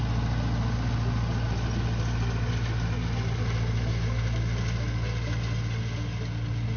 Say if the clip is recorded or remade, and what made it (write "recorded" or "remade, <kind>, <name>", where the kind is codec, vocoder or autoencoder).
recorded